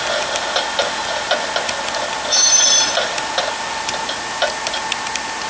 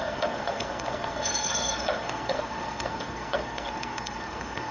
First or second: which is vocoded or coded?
second